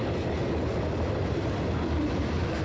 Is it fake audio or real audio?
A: real